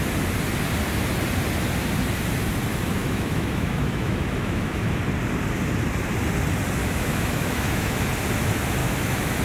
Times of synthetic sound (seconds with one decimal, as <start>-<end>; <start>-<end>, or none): 3.0-5.0; 6.8-8.0; 8.8-9.4